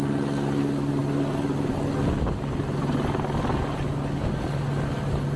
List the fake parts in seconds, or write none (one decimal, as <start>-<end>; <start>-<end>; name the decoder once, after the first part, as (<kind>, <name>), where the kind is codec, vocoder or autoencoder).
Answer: none

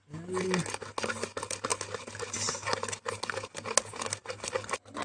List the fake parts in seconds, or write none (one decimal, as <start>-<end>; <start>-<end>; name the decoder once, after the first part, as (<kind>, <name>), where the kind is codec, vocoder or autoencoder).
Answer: none

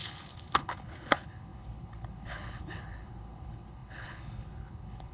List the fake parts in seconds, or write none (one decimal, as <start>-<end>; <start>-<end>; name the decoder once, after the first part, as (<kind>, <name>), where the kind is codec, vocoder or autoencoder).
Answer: 0.0-5.1 (codec, HILCodec)

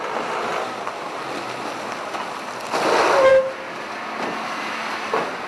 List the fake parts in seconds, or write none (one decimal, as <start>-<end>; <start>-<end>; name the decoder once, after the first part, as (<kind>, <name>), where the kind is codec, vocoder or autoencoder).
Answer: none